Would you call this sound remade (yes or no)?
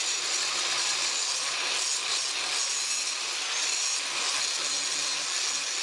no